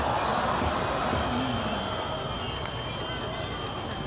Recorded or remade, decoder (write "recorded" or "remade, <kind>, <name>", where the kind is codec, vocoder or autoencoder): recorded